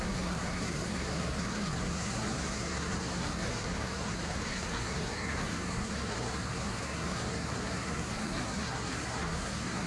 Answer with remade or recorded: remade